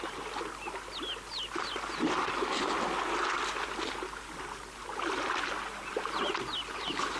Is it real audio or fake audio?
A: real